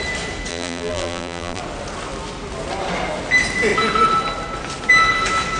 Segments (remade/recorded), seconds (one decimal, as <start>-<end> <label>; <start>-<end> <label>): 0.0-0.5 recorded; 0.5-1.6 remade; 1.6-5.6 recorded